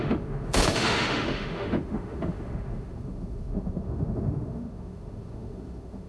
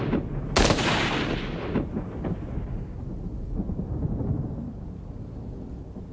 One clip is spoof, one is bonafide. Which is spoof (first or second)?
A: first